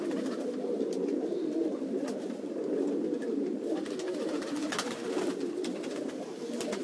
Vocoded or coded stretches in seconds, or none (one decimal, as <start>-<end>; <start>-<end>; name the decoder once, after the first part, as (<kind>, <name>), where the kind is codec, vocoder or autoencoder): 0.0-6.8 (vocoder, BigVGAN v2)